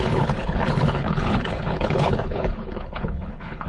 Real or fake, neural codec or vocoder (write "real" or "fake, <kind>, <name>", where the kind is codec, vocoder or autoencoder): fake, codec, HILCodec